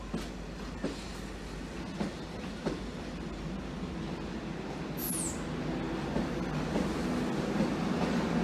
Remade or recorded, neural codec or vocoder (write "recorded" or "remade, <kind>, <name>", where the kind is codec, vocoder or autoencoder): recorded